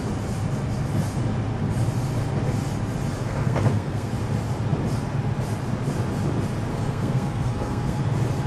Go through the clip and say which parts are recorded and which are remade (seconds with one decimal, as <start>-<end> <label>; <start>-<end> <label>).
0.0-3.2 recorded; 3.2-4.1 remade; 4.1-6.7 recorded; 6.7-8.0 remade; 8.0-8.5 recorded